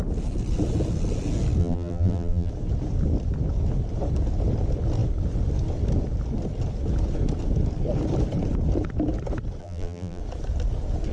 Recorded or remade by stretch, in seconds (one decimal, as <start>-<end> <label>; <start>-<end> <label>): 0.0-1.6 recorded; 1.6-2.5 remade; 2.5-9.6 recorded; 9.6-10.2 remade; 10.2-11.1 recorded